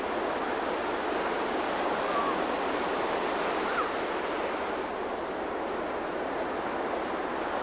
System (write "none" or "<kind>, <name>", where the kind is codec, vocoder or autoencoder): none